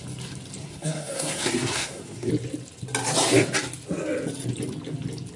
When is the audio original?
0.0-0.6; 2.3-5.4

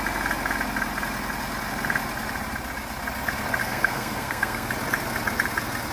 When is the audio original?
0.0-3.6; 4.7-5.9

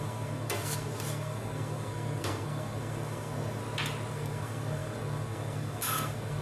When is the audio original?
3.6-4.1